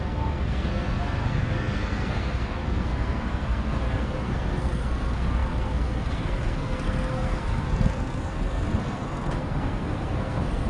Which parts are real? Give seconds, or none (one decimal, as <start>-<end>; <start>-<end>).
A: none